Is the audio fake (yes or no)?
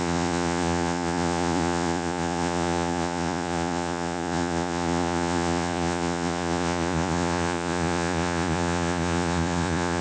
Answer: yes